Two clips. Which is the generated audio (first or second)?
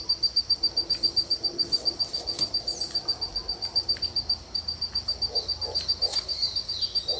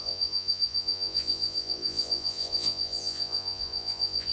second